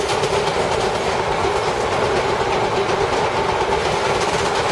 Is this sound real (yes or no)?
yes